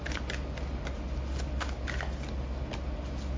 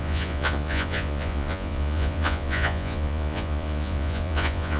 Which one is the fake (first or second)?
second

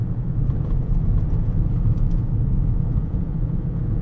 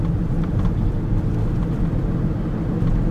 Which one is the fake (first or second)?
first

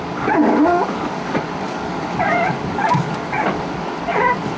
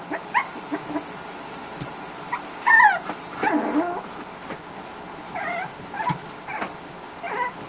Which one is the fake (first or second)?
first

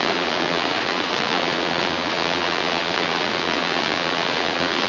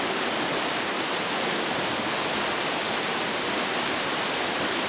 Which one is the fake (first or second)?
first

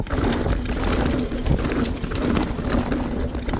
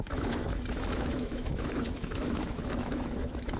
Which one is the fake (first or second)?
second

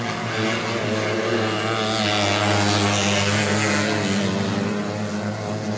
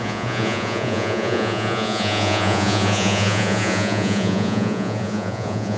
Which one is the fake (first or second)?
second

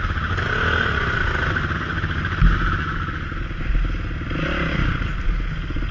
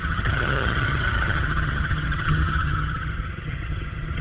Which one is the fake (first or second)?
second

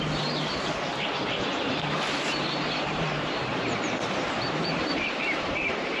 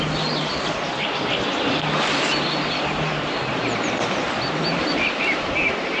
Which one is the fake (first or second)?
first